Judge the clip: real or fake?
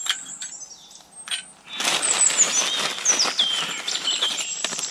real